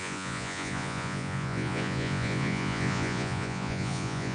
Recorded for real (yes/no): no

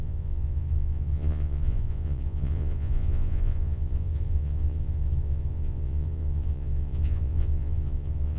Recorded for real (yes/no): no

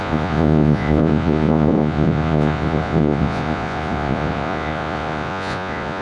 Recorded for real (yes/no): no